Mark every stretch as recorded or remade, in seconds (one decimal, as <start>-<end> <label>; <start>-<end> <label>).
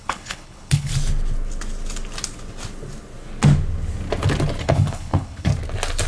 0.0-0.9 remade; 0.9-4.6 recorded; 4.6-5.5 remade; 5.5-6.1 recorded